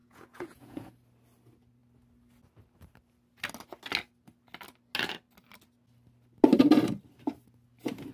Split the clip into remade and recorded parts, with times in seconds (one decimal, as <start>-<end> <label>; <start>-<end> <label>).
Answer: 0.0-0.9 remade; 0.9-8.1 recorded